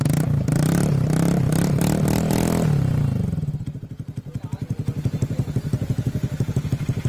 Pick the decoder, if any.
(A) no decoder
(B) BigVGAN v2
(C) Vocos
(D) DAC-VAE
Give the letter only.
A